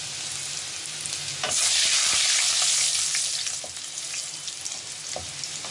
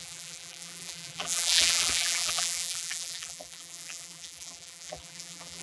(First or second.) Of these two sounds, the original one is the first